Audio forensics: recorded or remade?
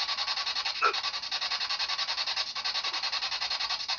recorded